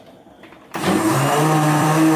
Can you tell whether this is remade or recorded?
remade